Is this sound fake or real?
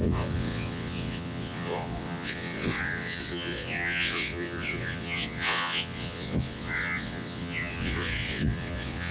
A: fake